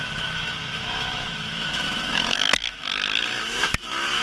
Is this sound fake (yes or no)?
yes